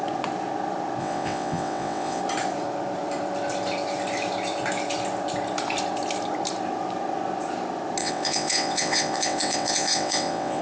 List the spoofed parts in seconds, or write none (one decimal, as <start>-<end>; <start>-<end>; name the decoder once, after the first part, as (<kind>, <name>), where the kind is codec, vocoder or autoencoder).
1.0-2.2 (vocoder, WaveNeXt); 8.0-10.6